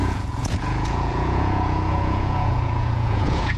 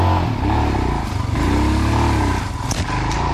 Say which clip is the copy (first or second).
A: first